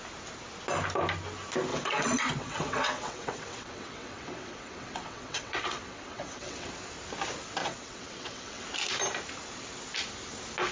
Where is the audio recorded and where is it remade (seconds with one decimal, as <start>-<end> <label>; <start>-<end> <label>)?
0.0-1.7 recorded; 1.7-6.7 remade; 6.7-7.6 recorded; 7.6-8.6 remade; 8.6-10.7 recorded